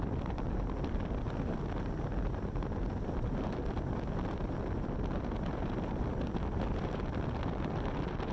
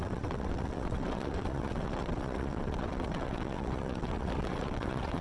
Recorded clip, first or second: first